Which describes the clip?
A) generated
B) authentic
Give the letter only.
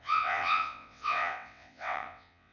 A